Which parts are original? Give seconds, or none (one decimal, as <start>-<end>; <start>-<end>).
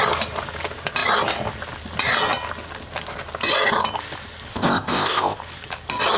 0.0-4.5; 5.4-6.2